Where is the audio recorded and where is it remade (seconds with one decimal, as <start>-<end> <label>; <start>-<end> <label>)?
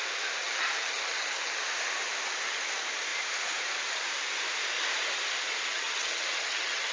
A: 0.0-0.4 recorded; 0.4-1.6 remade; 1.6-5.7 recorded; 5.7-6.9 remade